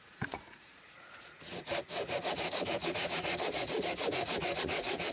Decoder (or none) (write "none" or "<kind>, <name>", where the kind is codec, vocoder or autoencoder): vocoder, Vocos